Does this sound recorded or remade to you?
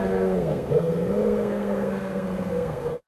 remade